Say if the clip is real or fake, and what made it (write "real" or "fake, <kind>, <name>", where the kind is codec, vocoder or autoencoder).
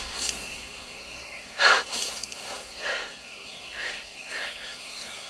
fake, codec, SNAC